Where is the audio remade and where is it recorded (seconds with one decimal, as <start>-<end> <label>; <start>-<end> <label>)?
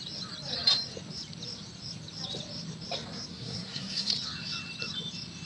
0.0-3.3 recorded; 3.3-4.1 remade; 4.1-5.5 recorded